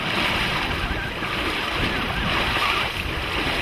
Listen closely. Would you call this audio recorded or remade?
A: recorded